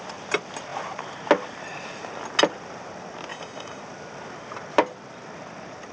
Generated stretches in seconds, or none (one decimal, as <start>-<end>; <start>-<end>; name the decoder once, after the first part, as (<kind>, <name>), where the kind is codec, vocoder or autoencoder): 3.3-3.8 (codec, DAC)